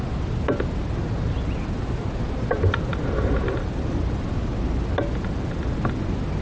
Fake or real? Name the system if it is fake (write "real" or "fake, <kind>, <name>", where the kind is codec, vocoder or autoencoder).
real